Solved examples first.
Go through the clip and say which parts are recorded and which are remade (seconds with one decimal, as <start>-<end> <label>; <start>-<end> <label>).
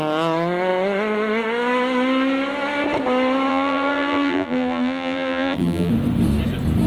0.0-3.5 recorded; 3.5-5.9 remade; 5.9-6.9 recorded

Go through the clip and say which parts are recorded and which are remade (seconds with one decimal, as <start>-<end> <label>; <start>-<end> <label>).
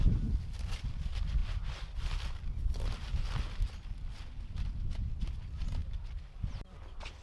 0.0-5.8 recorded; 5.8-6.3 remade; 6.3-7.2 recorded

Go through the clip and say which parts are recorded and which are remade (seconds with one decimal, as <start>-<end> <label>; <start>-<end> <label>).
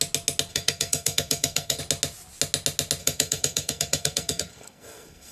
0.0-0.5 recorded; 0.5-1.8 remade; 1.8-3.0 recorded; 3.0-5.3 remade